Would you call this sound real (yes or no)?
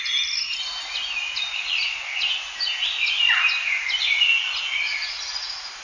yes